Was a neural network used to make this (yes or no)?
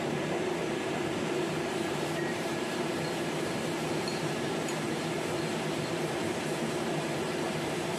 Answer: yes